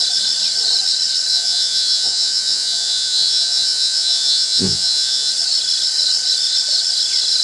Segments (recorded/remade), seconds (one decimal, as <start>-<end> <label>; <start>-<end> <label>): 0.0-1.3 recorded; 1.3-5.3 remade; 5.3-7.4 recorded